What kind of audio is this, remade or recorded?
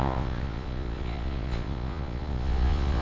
remade